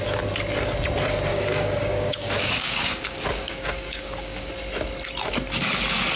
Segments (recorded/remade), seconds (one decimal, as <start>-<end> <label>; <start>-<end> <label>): 0.0-1.3 recorded; 1.3-4.5 remade; 4.5-6.2 recorded